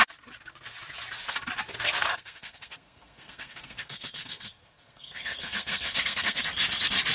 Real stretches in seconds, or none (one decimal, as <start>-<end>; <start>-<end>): 0.0-2.1; 6.4-7.1